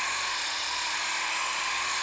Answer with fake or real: real